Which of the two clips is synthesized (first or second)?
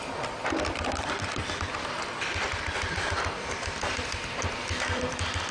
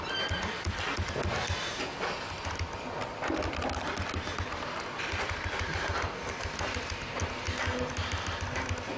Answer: first